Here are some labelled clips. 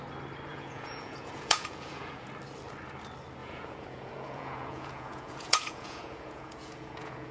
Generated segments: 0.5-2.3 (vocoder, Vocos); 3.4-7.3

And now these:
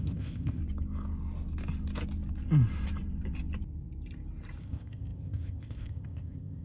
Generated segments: 0.0-0.6 (codec, ZipCodec); 4.6-6.6